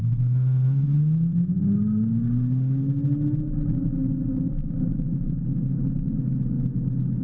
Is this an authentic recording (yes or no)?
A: yes